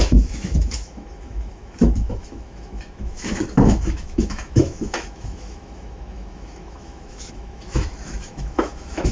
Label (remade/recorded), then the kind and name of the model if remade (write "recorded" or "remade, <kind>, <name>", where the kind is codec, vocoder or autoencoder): remade, autoencoder, DAC-VAE